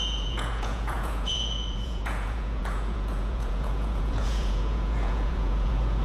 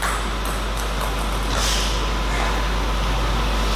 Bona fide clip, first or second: second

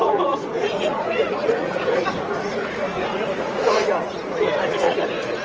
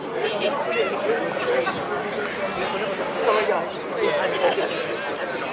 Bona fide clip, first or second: second